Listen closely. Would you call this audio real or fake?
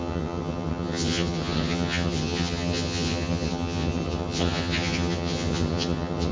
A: fake